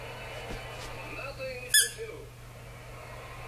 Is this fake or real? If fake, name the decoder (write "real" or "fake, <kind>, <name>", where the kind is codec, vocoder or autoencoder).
real